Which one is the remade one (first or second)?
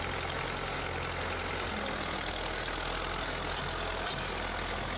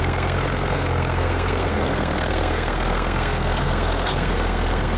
second